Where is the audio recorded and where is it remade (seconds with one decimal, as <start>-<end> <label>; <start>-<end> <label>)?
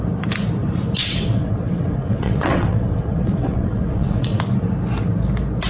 0.0-1.0 recorded; 1.0-4.4 remade; 4.4-5.7 recorded